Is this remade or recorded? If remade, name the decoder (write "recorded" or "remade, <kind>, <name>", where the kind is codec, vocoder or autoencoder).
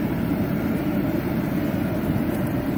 remade, vocoder, BigVGAN v2